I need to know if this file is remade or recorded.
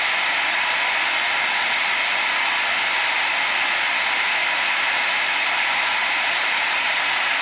recorded